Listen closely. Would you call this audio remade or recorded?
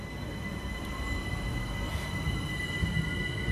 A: recorded